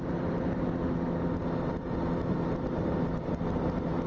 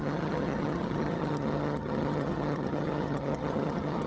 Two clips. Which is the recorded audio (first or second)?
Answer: first